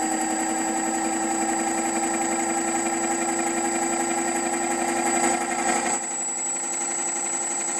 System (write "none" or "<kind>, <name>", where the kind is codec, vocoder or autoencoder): none